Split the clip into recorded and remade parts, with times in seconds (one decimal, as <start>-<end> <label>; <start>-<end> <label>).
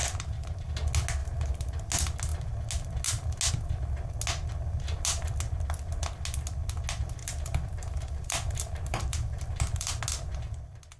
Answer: 0.0-0.7 remade; 0.7-1.2 recorded; 1.2-1.9 remade; 1.9-7.2 recorded; 7.2-10.0 remade; 10.0-11.0 recorded